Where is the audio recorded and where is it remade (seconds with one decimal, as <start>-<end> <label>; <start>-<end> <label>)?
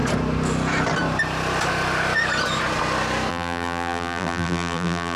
0.0-3.3 recorded; 3.3-5.2 remade